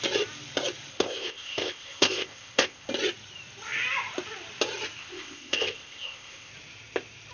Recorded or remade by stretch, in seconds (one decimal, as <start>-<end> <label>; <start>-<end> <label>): 0.0-0.9 recorded; 0.9-2.9 remade; 2.9-5.0 recorded; 5.0-6.5 remade; 6.5-7.3 recorded